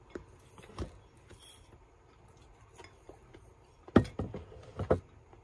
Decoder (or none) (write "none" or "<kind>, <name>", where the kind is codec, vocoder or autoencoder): none